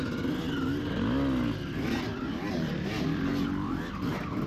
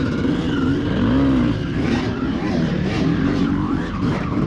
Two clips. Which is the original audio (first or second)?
first